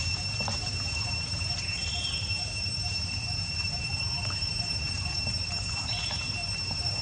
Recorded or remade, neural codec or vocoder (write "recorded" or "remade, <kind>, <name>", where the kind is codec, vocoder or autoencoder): remade, vocoder, BigVGAN v2